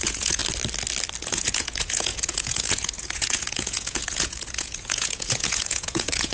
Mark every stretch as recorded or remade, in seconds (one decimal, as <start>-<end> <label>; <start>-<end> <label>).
0.0-0.4 remade; 0.4-1.2 recorded; 1.2-6.3 remade